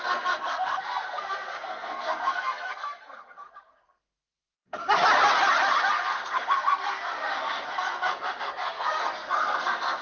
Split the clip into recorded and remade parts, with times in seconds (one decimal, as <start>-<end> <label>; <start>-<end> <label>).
0.0-4.8 remade; 4.8-5.9 recorded; 5.9-10.0 remade